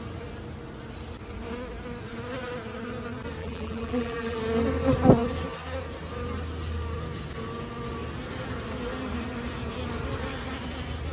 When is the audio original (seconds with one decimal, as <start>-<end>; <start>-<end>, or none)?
0.0-3.4; 4.4-11.1